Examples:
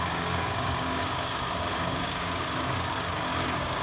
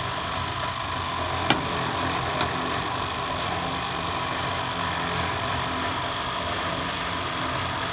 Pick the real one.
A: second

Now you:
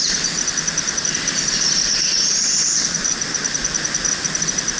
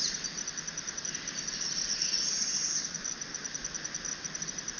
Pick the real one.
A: second